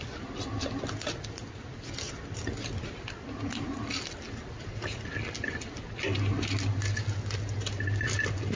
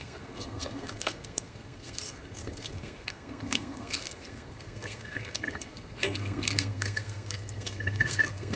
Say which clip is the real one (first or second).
first